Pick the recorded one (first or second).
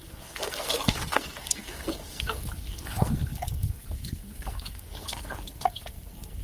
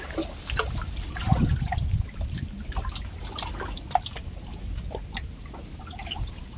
second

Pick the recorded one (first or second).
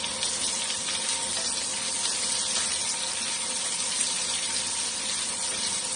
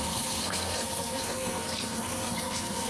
first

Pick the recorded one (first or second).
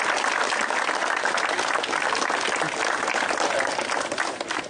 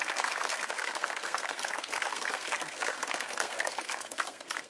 first